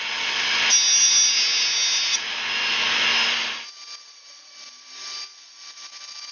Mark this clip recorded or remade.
recorded